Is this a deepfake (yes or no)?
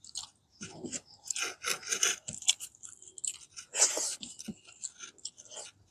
no